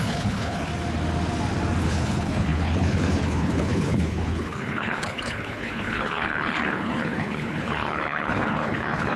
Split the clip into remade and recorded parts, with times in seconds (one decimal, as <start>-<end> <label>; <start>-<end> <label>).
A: 0.0-0.7 remade; 0.7-1.8 recorded; 1.8-9.2 remade

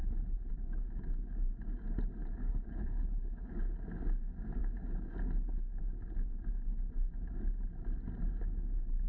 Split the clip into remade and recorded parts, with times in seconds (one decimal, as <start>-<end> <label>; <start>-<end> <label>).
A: 0.0-0.5 remade; 0.5-2.4 recorded; 2.4-3.5 remade; 3.5-9.1 recorded

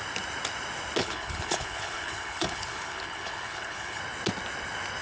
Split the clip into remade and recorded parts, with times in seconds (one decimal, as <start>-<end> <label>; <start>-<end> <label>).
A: 0.0-1.0 recorded; 1.0-4.0 remade; 4.0-5.0 recorded

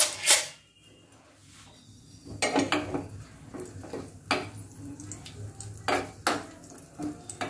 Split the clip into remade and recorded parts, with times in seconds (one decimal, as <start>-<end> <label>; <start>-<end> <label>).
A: 0.0-7.5 recorded